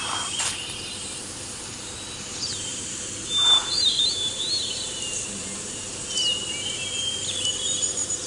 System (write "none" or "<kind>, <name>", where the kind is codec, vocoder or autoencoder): vocoder, BigVGAN v2